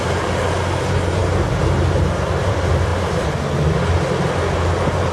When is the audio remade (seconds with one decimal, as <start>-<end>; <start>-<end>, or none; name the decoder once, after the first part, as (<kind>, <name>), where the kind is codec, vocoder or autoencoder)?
none